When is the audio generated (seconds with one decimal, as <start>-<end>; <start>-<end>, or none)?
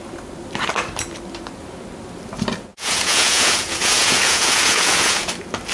2.7-5.3